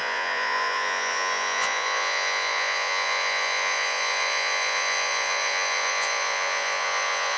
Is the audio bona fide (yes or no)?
no